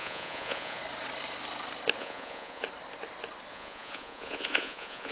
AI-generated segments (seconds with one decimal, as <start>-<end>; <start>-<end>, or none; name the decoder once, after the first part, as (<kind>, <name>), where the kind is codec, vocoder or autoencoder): 0.0-0.8 (vocoder, Vocos); 2.0-2.6; 3.5-5.1